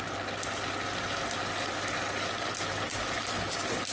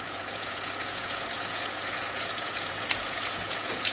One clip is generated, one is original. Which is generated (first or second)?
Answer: second